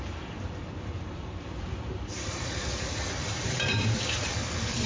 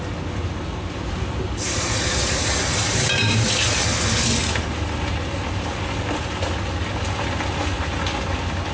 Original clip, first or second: second